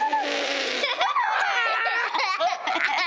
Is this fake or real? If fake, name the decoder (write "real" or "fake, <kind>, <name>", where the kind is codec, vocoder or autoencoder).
real